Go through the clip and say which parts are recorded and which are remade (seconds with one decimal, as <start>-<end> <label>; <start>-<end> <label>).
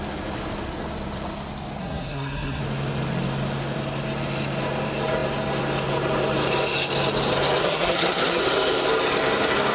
0.0-1.8 recorded; 1.8-2.6 remade; 2.6-7.6 recorded; 7.6-8.4 remade; 8.4-9.7 recorded